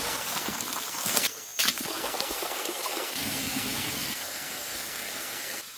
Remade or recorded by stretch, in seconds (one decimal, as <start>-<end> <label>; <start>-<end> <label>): 0.0-5.8 remade